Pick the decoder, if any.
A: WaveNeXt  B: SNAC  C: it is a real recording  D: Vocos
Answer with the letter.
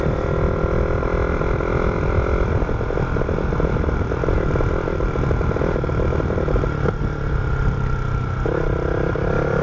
C